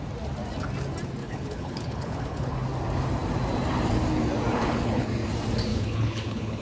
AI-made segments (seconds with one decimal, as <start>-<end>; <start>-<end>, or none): 1.2-2.5; 4.5-5.1; 5.7-6.6